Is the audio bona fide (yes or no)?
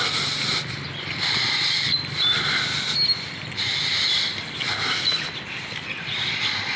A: yes